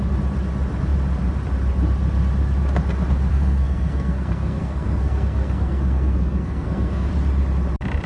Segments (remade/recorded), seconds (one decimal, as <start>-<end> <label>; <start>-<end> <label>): 0.0-3.3 recorded; 3.3-7.1 remade; 7.1-8.1 recorded